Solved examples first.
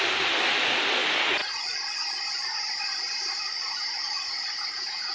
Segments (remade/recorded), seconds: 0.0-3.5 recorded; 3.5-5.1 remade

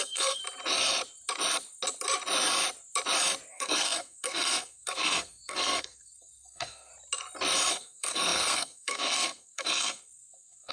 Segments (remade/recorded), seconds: 0.0-0.4 remade; 0.4-3.5 recorded; 3.5-6.9 remade; 6.9-7.7 recorded; 7.7-10.7 remade

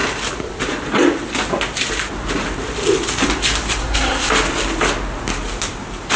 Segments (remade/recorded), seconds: 0.0-3.8 recorded; 3.8-4.3 remade; 4.3-6.2 recorded

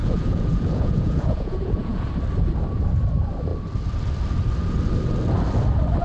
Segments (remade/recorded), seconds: 0.0-2.1 remade; 2.1-6.0 recorded

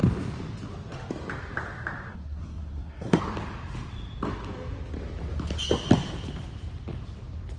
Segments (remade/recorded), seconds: 0.0-2.1 recorded; 2.1-3.2 remade; 3.2-7.6 recorded

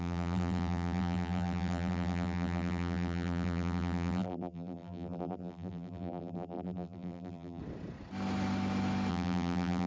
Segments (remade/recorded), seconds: 0.0-7.6 remade; 7.6-9.1 recorded; 9.1-9.9 remade

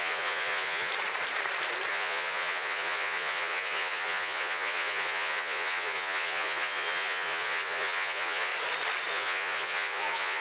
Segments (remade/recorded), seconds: 0.0-0.9 remade; 0.9-1.9 recorded; 1.9-8.5 remade; 8.5-9.1 recorded; 9.1-10.4 remade